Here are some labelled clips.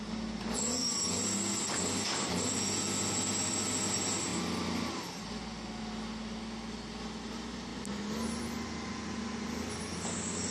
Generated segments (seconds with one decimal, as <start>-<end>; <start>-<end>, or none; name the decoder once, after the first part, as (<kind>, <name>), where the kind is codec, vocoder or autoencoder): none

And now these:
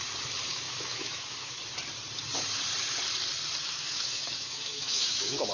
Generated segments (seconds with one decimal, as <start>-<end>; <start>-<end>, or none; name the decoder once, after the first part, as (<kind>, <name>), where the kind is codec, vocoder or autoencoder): 0.5-1.6 (autoencoder, DAC-VAE); 3.6-5.5

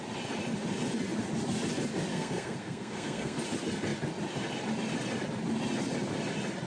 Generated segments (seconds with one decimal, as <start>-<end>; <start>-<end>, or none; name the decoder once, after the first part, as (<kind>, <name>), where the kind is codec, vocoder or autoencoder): 2.1-3.4 (codec, SNAC)

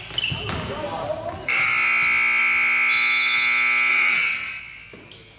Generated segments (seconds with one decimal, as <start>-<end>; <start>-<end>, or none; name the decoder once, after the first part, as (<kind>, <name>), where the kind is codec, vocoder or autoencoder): 3.9-4.6 (vocoder, WaveNeXt)